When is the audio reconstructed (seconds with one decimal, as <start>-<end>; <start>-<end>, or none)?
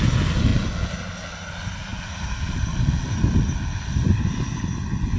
none